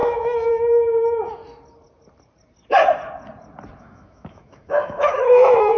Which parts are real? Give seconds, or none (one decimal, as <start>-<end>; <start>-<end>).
1.4-3.8